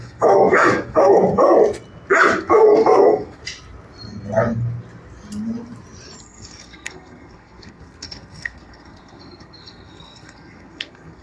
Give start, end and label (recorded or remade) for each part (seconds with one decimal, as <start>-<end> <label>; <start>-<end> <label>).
0.0-1.2 remade; 1.2-2.4 recorded; 2.4-3.4 remade; 3.4-6.2 recorded; 6.2-11.2 remade